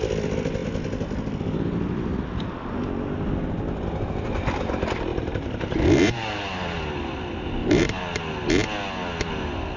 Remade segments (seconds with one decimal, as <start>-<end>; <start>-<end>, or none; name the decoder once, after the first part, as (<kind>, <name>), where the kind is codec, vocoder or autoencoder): 5.1-6.8 (vocoder, BigVGAN v2); 7.6-8.2